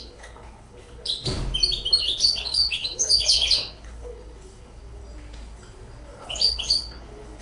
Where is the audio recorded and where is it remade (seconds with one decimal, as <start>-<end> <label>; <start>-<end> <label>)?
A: 0.0-1.2 remade; 1.2-2.0 recorded; 2.0-5.0 remade; 5.0-6.0 recorded; 6.0-7.4 remade